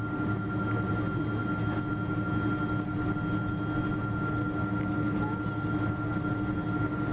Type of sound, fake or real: real